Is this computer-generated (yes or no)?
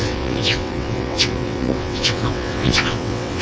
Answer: yes